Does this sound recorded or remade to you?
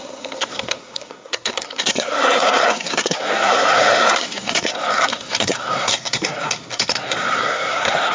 remade